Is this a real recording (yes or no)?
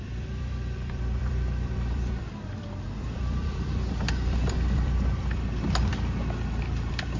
no